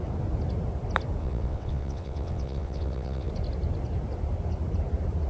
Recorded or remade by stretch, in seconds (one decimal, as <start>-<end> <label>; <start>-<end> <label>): 0.0-1.2 recorded; 1.2-3.3 remade; 3.3-5.3 recorded